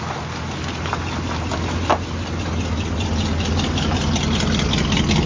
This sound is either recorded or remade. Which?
recorded